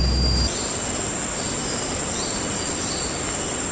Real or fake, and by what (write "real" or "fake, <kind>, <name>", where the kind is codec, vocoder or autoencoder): real